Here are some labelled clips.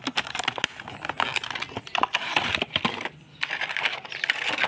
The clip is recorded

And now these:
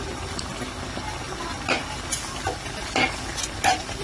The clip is recorded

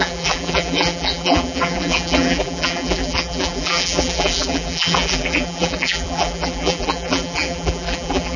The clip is remade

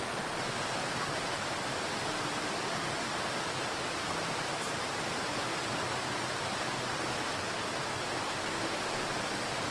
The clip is recorded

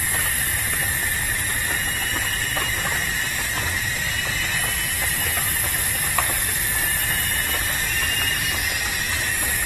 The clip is recorded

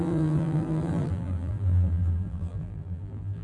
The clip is remade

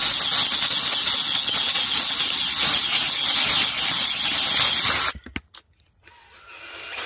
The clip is recorded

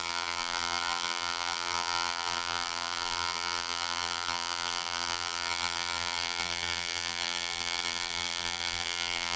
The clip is remade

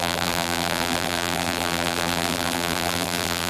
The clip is remade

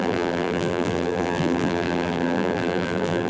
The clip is remade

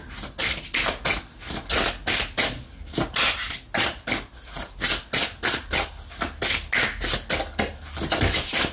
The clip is recorded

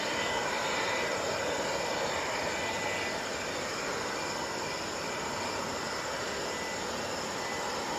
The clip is recorded